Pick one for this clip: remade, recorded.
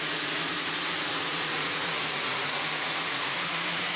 remade